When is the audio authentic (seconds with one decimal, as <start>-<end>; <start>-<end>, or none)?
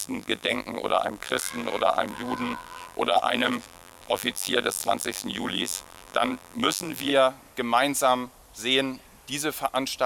7.1-10.1